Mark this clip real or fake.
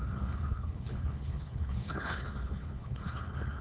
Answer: fake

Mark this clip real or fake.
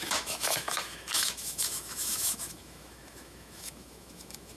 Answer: fake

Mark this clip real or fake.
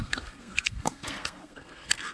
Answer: fake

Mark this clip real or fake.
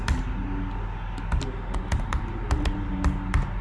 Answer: real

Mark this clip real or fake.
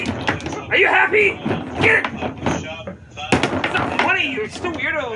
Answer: real